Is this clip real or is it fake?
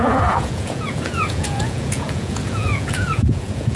fake